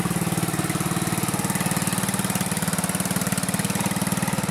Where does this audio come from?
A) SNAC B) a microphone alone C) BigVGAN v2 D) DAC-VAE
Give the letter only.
B